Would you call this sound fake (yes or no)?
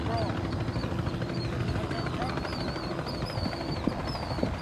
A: yes